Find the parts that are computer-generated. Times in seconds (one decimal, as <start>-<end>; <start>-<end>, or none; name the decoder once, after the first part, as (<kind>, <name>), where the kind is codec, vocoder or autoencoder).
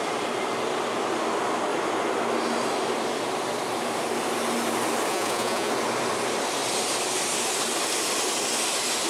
5.1-5.7 (vocoder, Vocos)